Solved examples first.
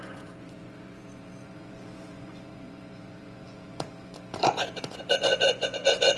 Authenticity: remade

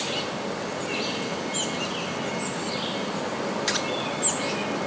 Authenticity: recorded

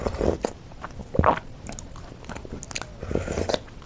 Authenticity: recorded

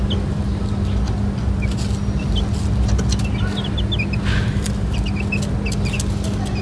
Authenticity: recorded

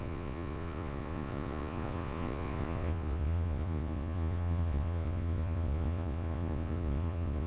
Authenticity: remade